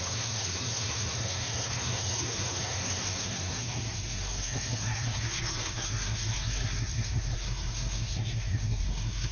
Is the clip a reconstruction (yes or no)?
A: yes